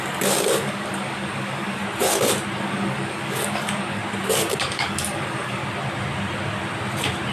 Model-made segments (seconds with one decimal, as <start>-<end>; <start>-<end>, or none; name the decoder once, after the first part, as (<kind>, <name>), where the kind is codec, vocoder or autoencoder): 0.0-1.8 (codec, DAC); 2.6-4.0; 4.5-5.6